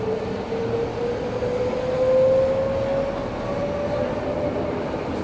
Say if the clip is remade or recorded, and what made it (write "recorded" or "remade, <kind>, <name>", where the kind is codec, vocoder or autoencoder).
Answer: recorded